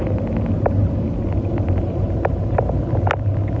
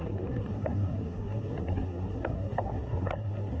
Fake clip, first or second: second